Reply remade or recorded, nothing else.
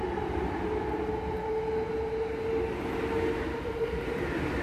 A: recorded